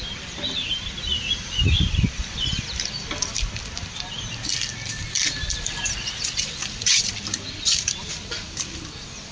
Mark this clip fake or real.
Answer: fake